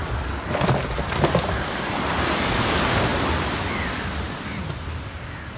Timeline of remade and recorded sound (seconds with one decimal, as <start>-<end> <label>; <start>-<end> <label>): 0.0-5.6 remade